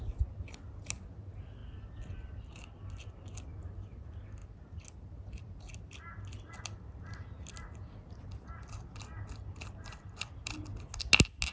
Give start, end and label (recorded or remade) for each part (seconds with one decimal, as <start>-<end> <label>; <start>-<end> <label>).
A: 0.0-11.5 recorded